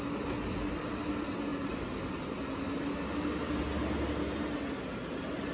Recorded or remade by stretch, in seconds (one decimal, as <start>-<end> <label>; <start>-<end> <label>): 0.0-5.5 recorded